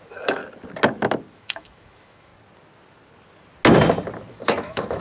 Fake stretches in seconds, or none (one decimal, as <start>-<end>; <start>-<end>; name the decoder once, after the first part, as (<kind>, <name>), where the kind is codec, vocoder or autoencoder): 0.0-0.4 (autoencoder, DAC-VAE); 1.3-2.3; 4.3-5.0